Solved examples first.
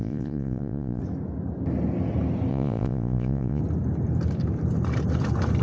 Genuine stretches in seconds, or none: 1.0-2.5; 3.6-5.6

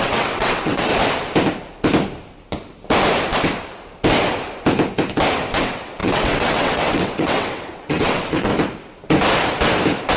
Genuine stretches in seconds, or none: 0.9-5.6; 8.5-10.2

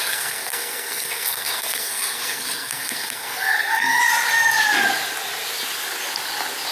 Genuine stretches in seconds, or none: 4.0-6.7